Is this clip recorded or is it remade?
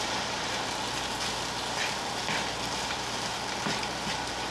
recorded